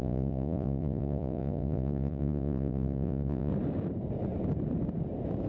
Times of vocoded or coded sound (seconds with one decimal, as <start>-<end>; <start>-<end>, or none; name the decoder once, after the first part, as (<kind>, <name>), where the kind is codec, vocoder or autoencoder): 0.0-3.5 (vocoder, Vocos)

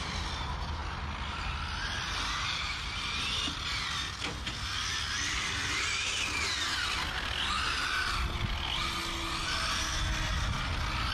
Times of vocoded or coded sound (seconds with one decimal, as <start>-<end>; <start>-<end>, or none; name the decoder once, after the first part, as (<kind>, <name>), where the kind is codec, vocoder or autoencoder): none

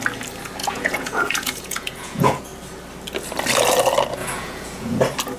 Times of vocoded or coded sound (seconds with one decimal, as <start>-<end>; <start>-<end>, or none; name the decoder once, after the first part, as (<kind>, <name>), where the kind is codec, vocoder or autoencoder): 0.6-2.4 (vocoder, Vocos); 4.2-5.0

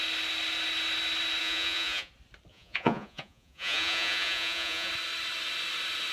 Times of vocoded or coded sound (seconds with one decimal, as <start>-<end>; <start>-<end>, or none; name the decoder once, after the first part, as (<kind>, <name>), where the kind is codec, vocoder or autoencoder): 1.4-2.1 (vocoder, Vocos); 2.5-4.9

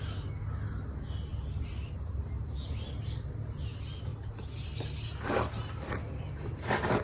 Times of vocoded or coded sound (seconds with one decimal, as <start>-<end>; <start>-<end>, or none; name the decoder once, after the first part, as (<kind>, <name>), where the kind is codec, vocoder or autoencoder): none

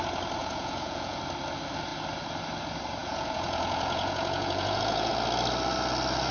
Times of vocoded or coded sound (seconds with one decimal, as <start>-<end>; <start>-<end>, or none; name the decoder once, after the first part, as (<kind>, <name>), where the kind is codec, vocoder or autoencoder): 0.4-1.2 (vocoder, Vocos); 3.0-5.1

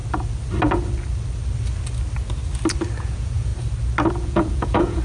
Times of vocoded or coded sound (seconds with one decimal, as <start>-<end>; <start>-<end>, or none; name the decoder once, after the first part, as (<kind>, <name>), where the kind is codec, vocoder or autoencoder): 3.0-3.5 (vocoder, Vocos); 4.1-5.0